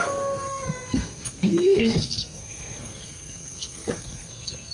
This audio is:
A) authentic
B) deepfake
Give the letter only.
B